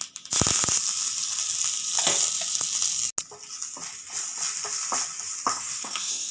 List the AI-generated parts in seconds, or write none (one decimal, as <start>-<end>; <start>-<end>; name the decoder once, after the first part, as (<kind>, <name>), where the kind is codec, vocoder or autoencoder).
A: 5.5-6.3 (codec, SNAC)